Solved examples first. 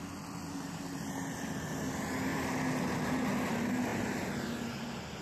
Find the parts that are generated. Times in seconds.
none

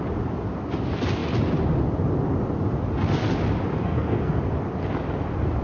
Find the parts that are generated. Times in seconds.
3.8-4.4 (codec, SNAC)

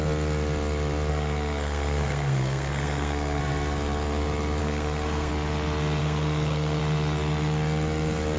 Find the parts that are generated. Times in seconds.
1.1-3.4 (codec, SNAC); 4.6-5.3; 6.0-6.8

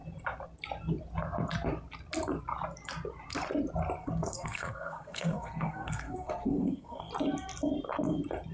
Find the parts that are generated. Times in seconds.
4.0-7.1 (codec, SNAC)